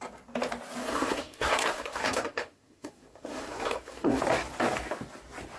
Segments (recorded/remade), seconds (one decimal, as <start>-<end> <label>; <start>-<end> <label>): 0.0-0.8 recorded; 0.8-4.2 remade; 4.2-5.6 recorded